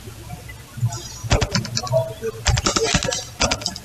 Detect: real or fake real